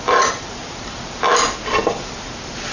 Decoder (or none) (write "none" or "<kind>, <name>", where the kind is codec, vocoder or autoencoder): vocoder, BigVGAN v2